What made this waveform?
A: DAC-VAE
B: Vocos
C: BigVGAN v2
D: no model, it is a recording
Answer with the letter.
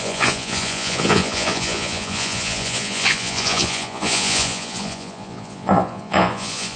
B